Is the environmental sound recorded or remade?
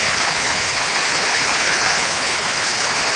remade